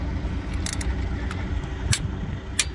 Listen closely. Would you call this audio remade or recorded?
recorded